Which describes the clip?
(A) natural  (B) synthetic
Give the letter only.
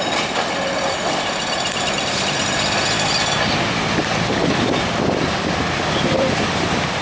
B